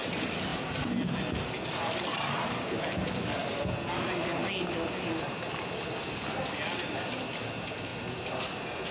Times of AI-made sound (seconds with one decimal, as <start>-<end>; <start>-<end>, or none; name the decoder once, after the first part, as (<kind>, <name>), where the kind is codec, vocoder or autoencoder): none

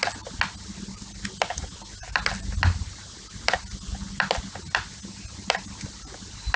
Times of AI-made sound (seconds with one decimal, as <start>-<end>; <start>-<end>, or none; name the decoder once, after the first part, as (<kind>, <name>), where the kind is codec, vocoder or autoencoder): none